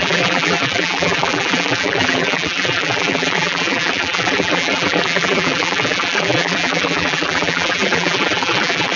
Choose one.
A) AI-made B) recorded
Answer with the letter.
A